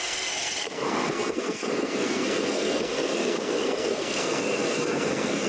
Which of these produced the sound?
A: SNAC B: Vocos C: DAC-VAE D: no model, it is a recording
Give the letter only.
A